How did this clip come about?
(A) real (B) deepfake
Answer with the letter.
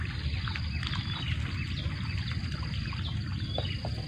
A